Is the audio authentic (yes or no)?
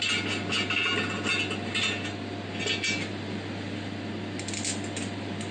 yes